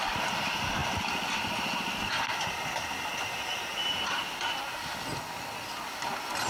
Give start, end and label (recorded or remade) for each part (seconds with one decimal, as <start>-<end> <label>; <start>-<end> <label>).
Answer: 0.0-6.5 recorded